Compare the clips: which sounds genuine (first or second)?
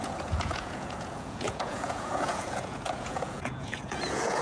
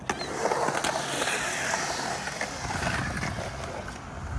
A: second